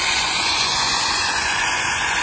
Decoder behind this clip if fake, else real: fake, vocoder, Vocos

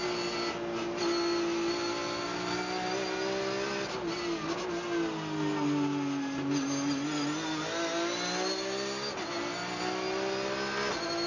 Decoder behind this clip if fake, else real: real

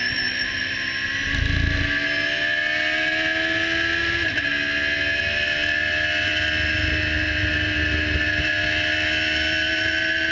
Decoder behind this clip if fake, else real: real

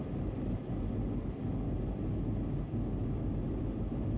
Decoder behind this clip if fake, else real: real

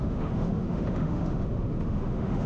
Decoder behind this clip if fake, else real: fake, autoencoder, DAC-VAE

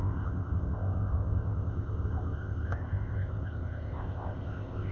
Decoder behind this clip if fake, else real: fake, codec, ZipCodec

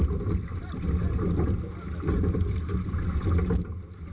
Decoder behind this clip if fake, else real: real